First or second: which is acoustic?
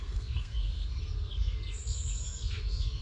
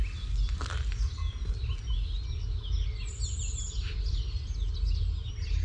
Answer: second